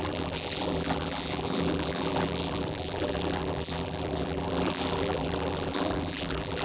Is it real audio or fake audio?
fake